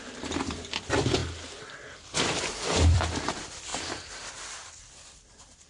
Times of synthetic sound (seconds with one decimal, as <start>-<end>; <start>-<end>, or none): 0.0-1.2; 2.0-5.7